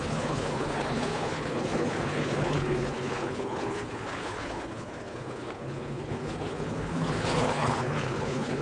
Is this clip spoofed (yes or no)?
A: yes